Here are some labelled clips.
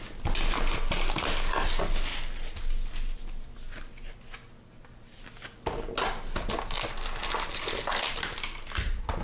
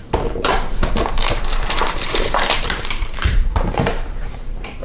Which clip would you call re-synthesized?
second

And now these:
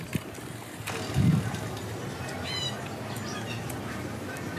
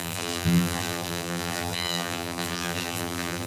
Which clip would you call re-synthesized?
second